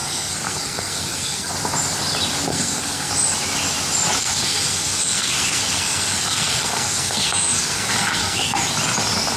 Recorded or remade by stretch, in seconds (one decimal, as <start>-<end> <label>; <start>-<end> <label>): 0.0-1.5 remade; 1.5-2.5 recorded; 2.5-3.1 remade; 3.1-4.2 recorded; 4.2-8.6 remade; 8.6-9.4 recorded